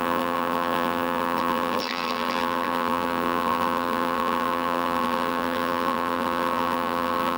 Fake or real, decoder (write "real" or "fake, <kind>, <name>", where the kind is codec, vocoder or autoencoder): fake, vocoder, BigVGAN v2